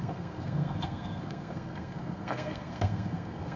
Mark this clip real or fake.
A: fake